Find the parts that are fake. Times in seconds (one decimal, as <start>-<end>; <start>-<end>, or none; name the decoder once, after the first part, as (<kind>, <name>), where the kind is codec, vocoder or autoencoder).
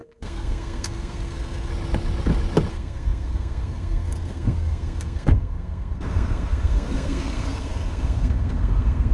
0.0-1.7 (codec, SNAC); 2.7-9.1